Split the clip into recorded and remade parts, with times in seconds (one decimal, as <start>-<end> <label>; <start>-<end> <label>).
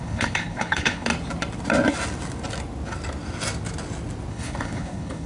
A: 0.0-1.1 remade; 1.1-4.3 recorded; 4.3-5.3 remade